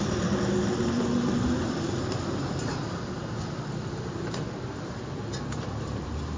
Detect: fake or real fake